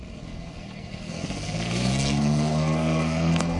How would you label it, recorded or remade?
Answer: remade